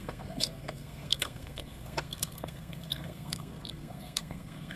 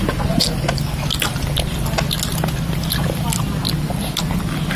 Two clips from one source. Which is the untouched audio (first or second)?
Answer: second